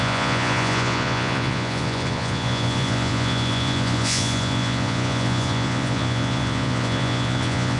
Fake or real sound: fake